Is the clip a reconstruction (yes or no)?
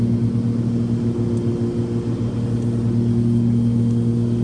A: no